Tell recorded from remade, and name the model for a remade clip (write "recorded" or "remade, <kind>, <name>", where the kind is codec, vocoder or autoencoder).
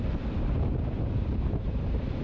remade, vocoder, BigVGAN v2